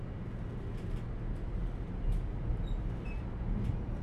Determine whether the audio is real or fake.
real